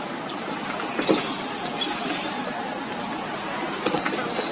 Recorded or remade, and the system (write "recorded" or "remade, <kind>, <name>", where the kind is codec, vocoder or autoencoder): recorded